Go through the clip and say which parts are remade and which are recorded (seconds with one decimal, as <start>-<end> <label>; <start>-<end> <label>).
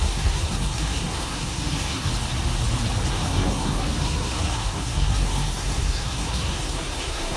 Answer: 0.0-2.1 remade; 2.1-3.1 recorded; 3.1-7.4 remade